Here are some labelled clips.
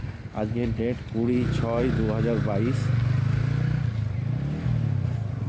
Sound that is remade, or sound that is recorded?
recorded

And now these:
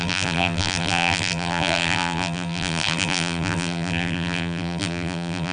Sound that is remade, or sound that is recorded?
remade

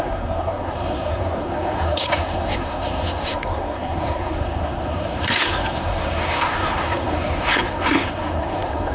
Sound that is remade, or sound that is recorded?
remade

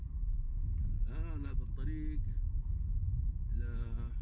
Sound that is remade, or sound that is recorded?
recorded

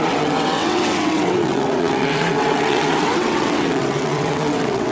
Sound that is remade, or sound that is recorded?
remade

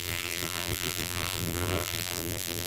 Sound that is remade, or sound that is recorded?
remade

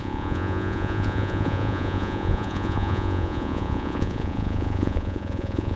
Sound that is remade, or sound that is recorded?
remade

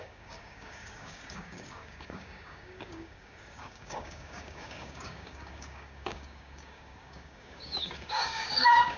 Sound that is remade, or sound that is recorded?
remade